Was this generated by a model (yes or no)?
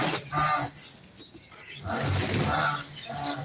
no